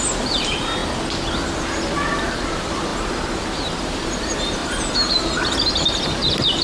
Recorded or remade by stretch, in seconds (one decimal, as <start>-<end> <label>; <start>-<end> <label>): 0.0-0.8 remade; 0.8-1.8 recorded; 1.8-2.9 remade; 2.9-3.4 recorded; 3.4-6.6 remade